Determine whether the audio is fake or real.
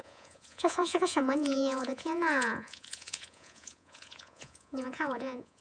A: fake